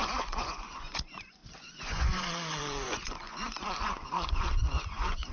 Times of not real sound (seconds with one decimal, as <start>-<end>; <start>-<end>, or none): 0.0-5.3